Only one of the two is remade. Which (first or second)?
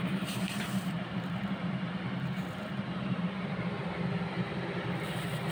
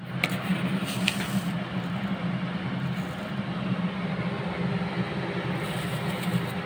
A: first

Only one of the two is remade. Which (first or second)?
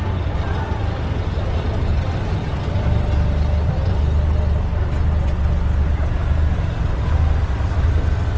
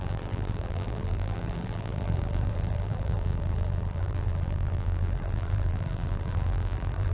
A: second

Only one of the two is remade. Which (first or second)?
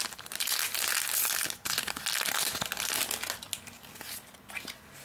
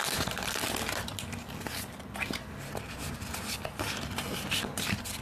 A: second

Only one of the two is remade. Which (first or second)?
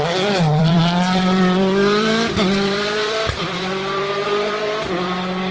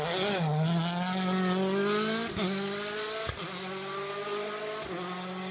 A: first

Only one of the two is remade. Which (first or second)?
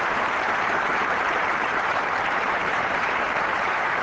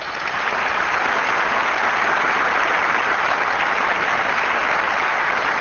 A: first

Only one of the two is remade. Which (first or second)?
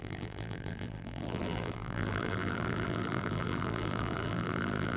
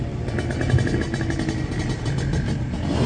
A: first